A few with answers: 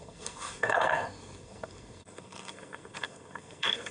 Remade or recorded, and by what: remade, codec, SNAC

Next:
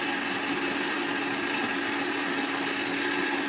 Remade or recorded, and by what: recorded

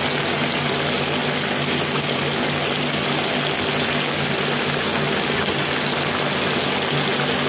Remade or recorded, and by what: recorded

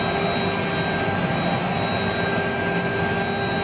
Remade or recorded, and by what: recorded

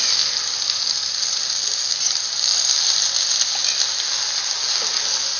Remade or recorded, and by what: recorded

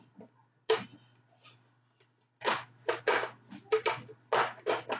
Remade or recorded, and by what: recorded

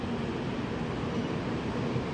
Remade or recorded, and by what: recorded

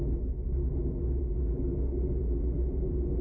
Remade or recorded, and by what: recorded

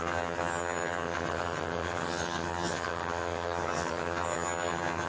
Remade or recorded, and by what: remade, vocoder, HiFi-GAN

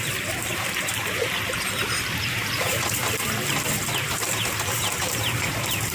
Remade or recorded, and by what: remade, vocoder, BigVGAN v2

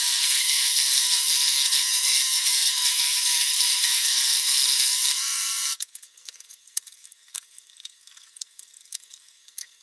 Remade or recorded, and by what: remade, codec, SNAC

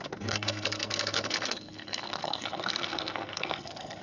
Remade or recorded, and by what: remade, codec, SNAC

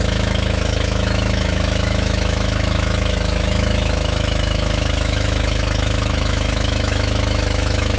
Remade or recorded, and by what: remade, autoencoder, DAC-VAE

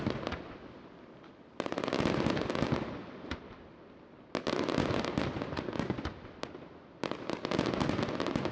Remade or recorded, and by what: recorded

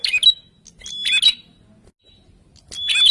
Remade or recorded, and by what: recorded